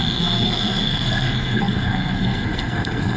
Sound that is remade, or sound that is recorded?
remade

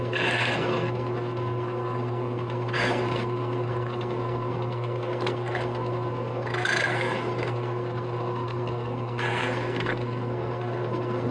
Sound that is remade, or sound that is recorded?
remade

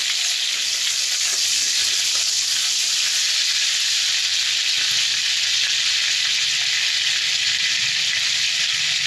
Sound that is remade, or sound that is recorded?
recorded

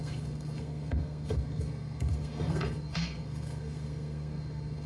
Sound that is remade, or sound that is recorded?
remade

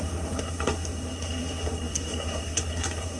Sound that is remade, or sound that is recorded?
remade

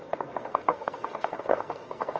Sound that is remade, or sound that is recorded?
remade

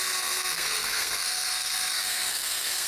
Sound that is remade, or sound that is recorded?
remade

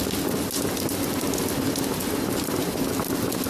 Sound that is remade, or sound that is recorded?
recorded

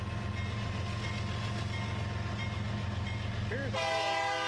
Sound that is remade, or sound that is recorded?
recorded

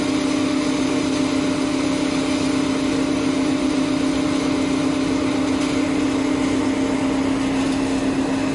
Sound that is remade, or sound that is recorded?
recorded